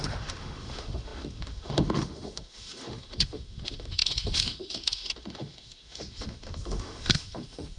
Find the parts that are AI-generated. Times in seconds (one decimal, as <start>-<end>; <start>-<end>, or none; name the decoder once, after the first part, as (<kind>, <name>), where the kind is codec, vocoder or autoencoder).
0.0-7.8 (autoencoder, DAC-VAE)